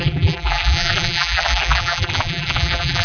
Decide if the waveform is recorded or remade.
remade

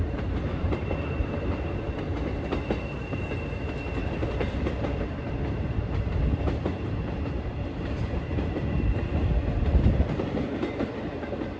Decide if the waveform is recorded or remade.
remade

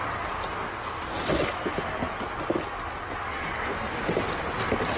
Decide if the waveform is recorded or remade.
recorded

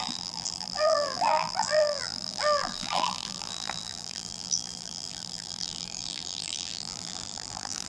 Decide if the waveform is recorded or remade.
remade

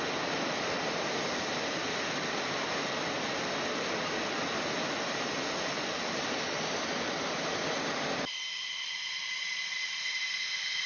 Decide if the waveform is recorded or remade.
recorded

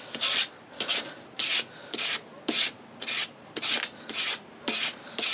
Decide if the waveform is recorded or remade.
remade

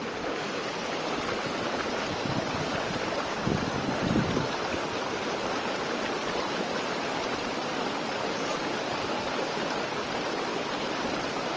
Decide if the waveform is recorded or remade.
recorded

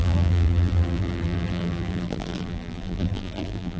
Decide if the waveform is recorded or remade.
remade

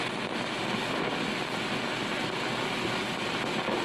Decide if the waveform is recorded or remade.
recorded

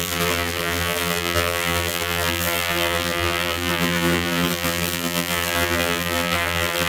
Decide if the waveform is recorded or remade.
remade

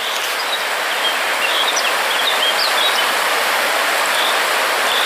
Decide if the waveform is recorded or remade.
recorded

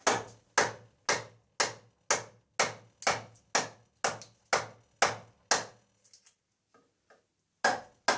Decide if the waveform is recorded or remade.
recorded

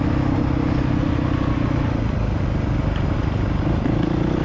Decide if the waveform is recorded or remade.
recorded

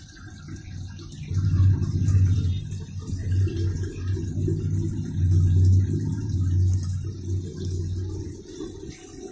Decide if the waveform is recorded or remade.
recorded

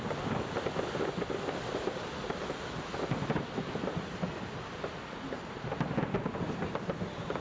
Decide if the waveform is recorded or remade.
recorded